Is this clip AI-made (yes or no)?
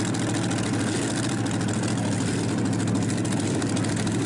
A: no